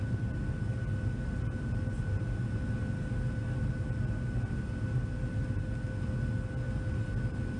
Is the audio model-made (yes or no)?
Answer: no